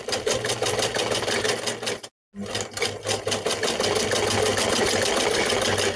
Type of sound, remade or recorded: recorded